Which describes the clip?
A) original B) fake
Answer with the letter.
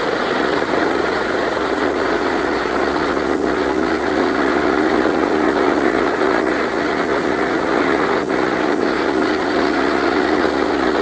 B